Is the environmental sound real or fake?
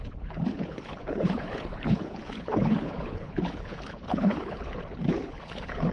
fake